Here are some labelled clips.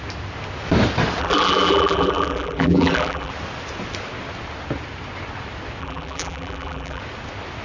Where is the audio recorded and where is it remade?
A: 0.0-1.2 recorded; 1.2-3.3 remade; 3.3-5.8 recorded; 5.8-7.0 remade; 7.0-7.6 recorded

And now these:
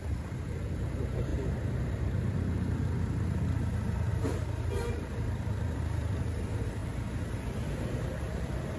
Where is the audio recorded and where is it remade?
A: 0.0-4.1 recorded; 4.1-5.8 remade; 5.8-8.8 recorded

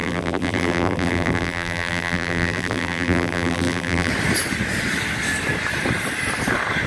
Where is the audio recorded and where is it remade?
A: 0.0-4.1 remade; 4.1-6.9 recorded

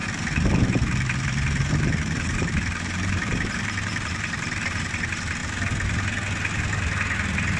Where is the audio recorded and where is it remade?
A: 0.0-4.6 remade; 4.6-7.6 recorded

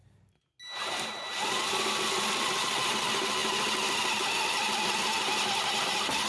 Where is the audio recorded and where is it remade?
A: 0.0-2.2 recorded; 2.2-6.3 remade

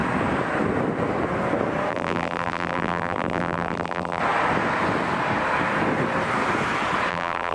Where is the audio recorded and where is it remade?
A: 0.0-1.9 recorded; 1.9-4.2 remade; 4.2-7.1 recorded; 7.1-7.5 remade

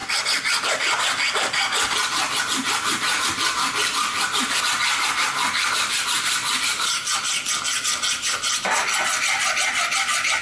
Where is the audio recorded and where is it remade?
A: 0.0-1.3 recorded; 1.3-10.4 remade